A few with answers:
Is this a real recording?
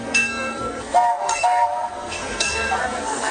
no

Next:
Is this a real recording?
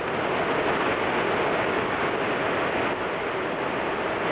yes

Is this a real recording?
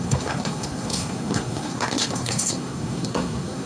no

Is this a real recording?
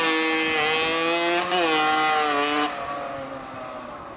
yes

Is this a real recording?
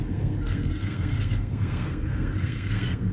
no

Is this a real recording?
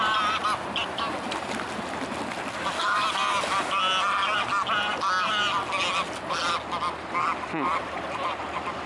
yes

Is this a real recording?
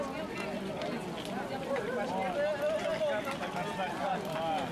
yes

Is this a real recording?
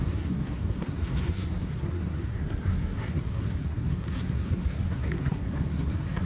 no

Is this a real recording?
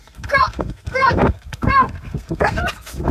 no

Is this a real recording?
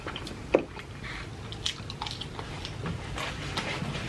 yes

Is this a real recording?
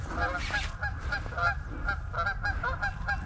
yes